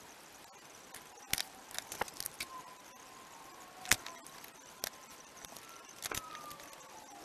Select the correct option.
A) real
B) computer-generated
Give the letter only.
A